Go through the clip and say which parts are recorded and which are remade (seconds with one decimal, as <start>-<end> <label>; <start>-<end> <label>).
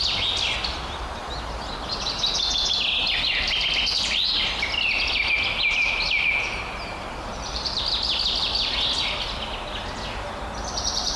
0.0-7.3 recorded; 7.3-7.8 remade; 7.8-11.2 recorded